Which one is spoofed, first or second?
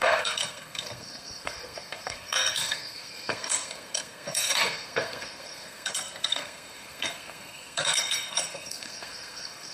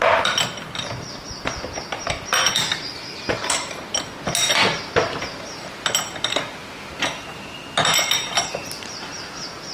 first